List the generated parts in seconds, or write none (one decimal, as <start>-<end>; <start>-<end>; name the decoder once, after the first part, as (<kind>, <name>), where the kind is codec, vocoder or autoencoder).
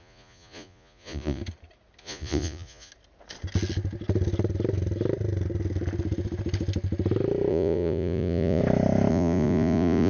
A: 0.0-1.4 (vocoder, Vocos); 2.0-2.9; 7.5-8.6; 9.1-10.1